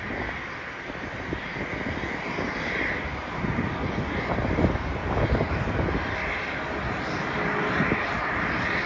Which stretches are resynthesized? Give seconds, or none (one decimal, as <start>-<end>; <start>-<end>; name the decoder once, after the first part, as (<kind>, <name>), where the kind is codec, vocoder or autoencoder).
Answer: 5.0-5.7 (vocoder, BigVGAN v2)